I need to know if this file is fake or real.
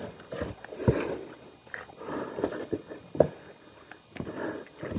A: real